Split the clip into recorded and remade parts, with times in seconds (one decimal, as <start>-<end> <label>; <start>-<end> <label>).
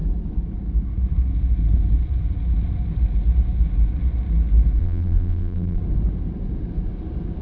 0.0-4.8 recorded; 4.8-5.8 remade; 5.8-7.4 recorded